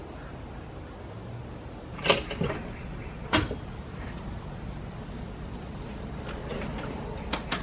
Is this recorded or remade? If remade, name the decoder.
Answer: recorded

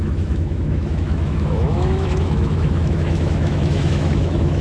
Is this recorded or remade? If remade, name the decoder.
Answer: remade, autoencoder, DAC-VAE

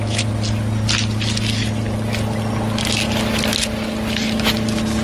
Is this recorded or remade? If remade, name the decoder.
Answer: recorded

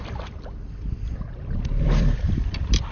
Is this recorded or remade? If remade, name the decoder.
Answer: remade, vocoder, BigVGAN v2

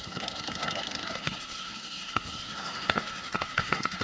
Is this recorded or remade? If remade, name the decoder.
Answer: remade, codec, SNAC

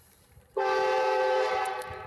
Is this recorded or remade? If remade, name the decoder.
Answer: remade, vocoder, BigVGAN v2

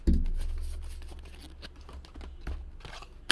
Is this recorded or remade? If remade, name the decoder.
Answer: recorded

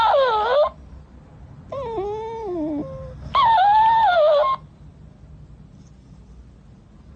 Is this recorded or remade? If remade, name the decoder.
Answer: recorded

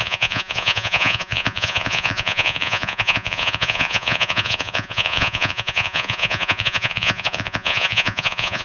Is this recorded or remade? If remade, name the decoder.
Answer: remade, vocoder, Vocos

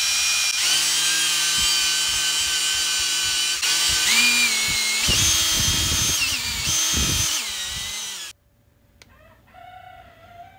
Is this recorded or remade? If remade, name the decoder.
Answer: recorded